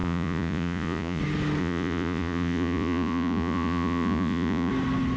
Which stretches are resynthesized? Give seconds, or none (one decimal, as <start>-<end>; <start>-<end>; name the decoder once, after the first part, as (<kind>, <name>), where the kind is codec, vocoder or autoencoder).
0.0-1.2 (vocoder, Vocos); 1.6-4.7